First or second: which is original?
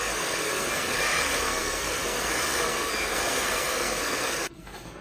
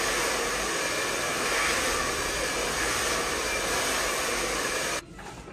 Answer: second